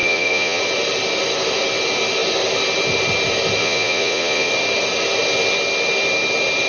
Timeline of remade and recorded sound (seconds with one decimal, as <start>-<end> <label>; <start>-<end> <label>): 0.0-0.6 remade; 0.6-3.6 recorded; 3.6-4.5 remade; 4.5-6.7 recorded